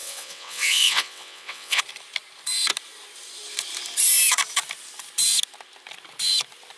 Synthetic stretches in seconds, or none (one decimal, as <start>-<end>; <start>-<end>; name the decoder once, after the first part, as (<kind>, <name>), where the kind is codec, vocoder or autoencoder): 0.0-1.8 (vocoder, WaveNeXt)